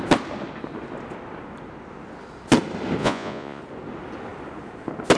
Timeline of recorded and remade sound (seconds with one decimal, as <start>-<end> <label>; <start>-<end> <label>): 0.0-3.0 recorded; 3.0-3.6 remade; 3.6-5.2 recorded